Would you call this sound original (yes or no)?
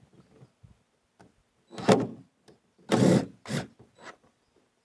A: yes